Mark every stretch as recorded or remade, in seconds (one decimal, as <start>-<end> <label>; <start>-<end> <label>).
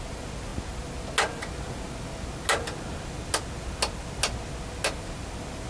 0.0-5.7 recorded